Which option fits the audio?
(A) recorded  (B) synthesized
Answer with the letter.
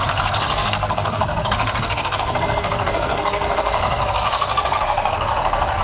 B